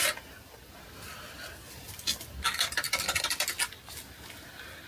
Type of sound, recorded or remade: recorded